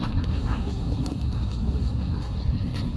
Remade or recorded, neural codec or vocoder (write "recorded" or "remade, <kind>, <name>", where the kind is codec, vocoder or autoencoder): remade, codec, SNAC